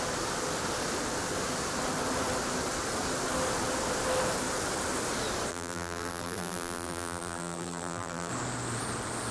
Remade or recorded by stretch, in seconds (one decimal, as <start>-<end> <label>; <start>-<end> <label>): 0.0-5.5 recorded; 5.5-8.3 remade; 8.3-9.3 recorded